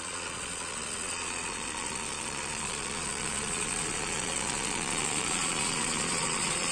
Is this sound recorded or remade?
remade